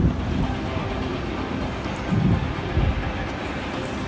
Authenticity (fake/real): real